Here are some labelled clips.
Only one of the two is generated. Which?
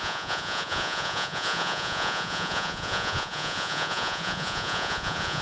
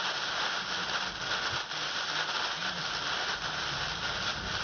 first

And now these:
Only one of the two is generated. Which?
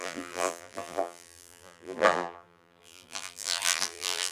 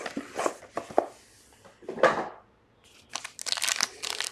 first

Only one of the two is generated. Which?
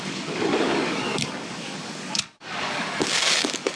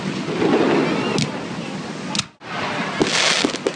first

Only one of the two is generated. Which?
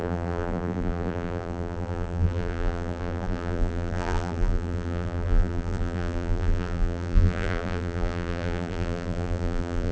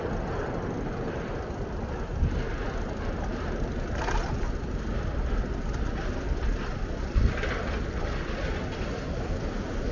first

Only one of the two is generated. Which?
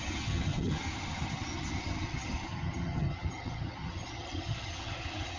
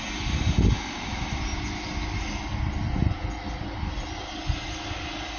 first